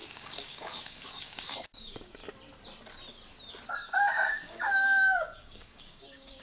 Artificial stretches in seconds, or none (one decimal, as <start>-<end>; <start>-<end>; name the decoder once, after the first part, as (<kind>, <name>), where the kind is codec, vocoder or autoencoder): 0.0-2.2 (codec, DAC); 3.7-6.4